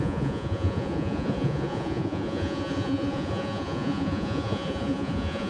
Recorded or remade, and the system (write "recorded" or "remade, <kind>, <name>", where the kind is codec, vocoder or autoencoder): remade, vocoder, Vocos